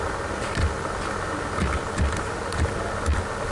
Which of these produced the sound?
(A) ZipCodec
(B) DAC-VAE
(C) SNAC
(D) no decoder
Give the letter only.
D